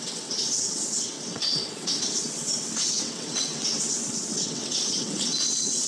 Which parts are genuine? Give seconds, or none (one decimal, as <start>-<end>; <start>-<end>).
none